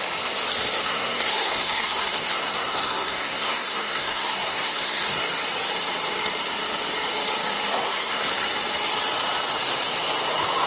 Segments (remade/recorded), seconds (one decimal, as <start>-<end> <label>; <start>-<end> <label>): 0.0-0.8 recorded; 0.8-5.2 remade; 5.2-7.7 recorded; 7.7-8.3 remade; 8.3-10.7 recorded